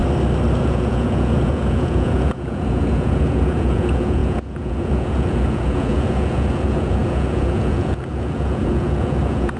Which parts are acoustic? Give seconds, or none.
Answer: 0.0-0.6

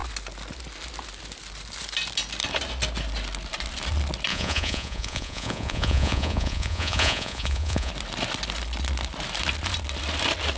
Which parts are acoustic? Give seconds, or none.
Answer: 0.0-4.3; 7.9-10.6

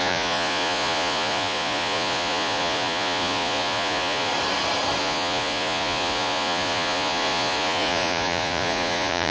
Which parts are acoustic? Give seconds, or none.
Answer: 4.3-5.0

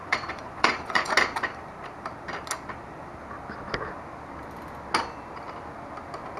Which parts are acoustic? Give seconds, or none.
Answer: 1.1-6.4

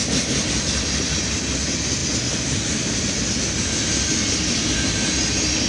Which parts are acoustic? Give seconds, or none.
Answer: 0.0-5.7

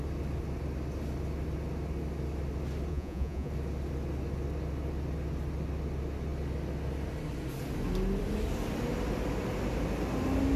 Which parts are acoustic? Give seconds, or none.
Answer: 0.0-2.9; 3.5-10.6